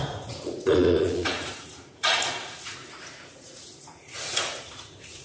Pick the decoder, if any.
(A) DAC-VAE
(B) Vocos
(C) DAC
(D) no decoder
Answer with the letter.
B